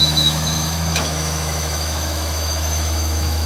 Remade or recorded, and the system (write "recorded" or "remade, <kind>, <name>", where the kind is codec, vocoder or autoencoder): remade, autoencoder, DAC-VAE